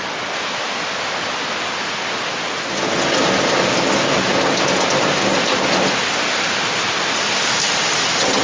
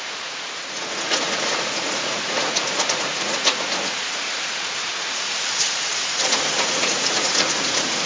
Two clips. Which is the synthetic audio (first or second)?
second